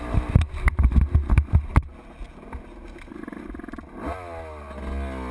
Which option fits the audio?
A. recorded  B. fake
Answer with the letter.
A